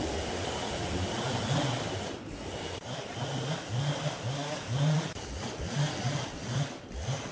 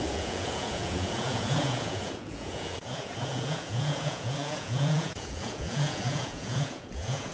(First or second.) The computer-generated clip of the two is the second